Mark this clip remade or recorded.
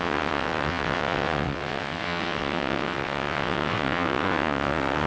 remade